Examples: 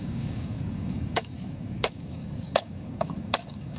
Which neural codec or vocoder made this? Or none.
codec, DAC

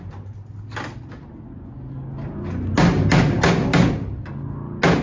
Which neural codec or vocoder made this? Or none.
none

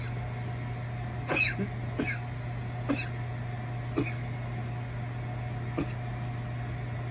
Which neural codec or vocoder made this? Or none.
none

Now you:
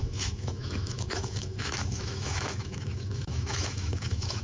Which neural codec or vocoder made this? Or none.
autoencoder, DAC-VAE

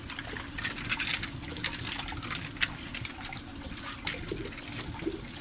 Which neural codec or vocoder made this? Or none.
none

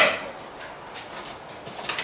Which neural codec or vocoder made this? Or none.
none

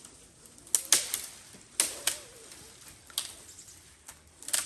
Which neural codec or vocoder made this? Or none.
none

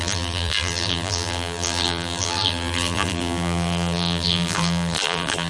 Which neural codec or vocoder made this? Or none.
vocoder, BigVGAN v2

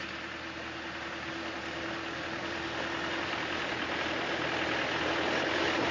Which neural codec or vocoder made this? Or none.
none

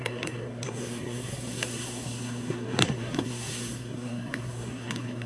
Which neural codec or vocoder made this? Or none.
codec, SNAC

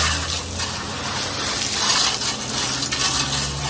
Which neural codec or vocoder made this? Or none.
none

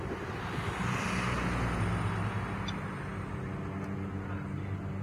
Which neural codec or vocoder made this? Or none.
none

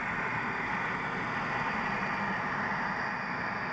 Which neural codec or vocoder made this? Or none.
none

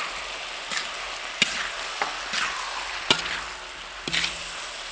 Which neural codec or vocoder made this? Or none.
none